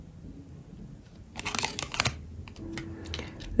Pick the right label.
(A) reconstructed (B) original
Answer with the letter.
B